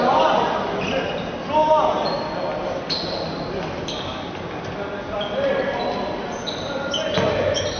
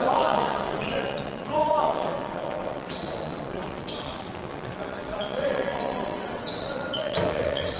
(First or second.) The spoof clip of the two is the second